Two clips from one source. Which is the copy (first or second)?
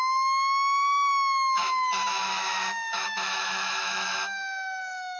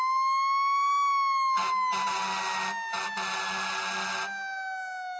first